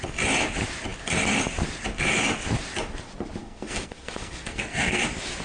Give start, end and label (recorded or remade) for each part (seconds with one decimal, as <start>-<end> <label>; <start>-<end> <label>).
0.0-3.4 recorded; 3.4-5.0 remade; 5.0-5.4 recorded